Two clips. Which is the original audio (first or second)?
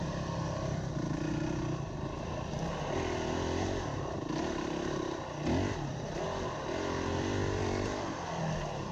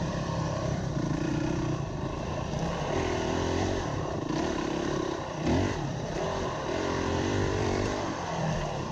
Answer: first